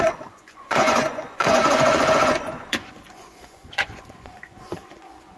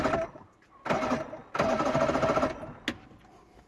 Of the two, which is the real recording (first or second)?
second